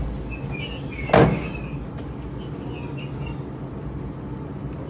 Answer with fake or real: real